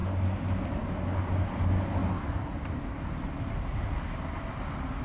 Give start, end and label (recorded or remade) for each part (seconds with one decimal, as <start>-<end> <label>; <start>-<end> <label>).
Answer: 0.0-5.0 recorded